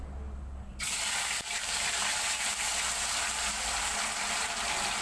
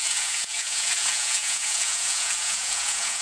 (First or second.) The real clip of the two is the first